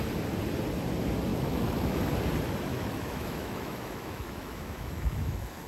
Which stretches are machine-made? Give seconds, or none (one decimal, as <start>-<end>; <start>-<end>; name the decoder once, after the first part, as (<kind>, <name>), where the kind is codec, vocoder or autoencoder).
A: 1.3-2.0 (autoencoder, DAC-VAE); 2.7-5.7